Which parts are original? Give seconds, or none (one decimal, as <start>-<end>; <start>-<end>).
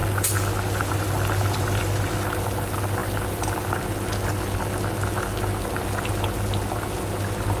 0.0-7.6